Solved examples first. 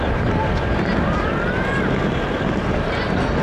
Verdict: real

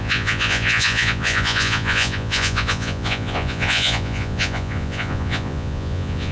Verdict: fake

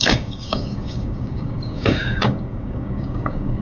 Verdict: fake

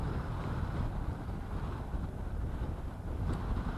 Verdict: real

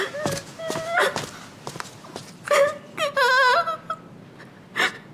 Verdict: real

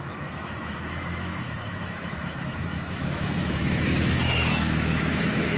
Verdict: fake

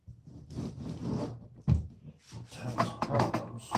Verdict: real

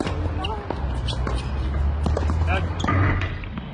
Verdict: real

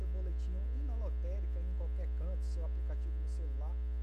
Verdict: real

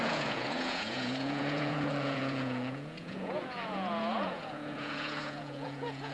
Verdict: fake